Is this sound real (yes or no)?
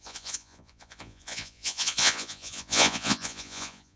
no